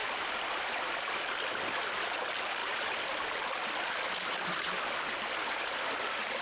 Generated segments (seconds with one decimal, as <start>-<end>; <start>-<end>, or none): 0.0-1.4; 2.6-4.7